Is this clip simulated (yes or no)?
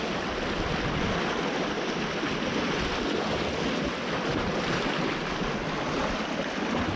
no